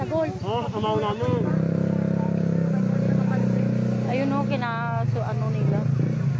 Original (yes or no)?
yes